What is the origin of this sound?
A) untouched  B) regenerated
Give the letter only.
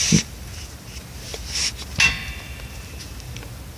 A